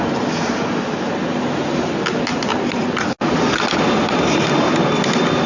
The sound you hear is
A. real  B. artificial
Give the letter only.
A